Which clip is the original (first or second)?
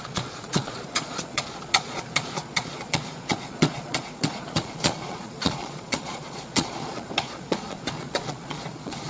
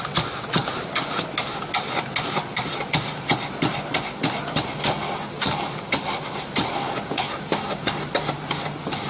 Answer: second